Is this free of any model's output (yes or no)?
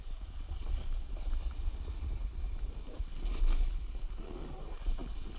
yes